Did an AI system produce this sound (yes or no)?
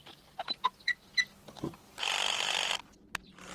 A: no